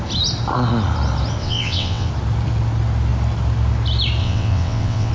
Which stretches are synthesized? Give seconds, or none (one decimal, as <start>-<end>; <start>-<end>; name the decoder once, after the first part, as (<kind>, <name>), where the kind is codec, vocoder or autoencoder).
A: 1.4-2.1 (vocoder, WaveNeXt); 4.2-5.1